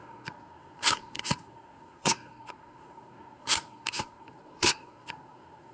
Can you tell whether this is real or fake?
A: fake